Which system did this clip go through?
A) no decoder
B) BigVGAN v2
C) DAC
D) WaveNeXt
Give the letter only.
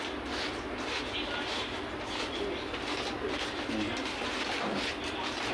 A